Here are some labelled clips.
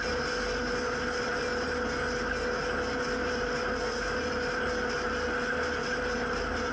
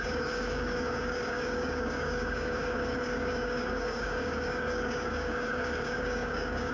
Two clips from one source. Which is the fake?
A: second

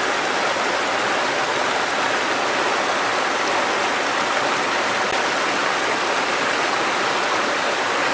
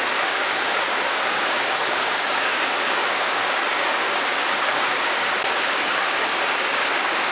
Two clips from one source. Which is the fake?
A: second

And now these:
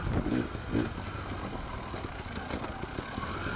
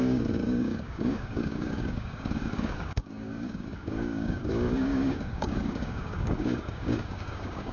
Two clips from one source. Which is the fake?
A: second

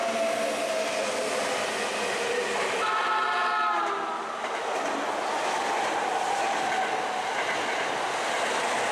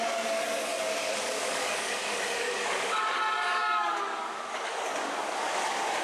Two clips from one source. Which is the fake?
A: second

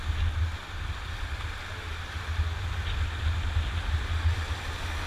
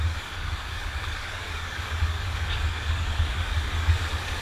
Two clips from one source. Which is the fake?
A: second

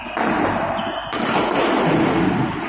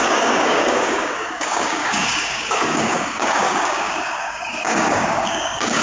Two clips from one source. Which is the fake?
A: second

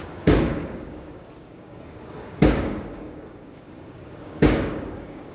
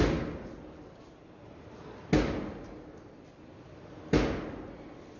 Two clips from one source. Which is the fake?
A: first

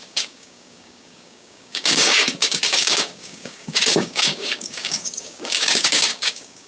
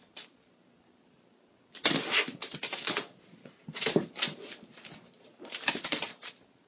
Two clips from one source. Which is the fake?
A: first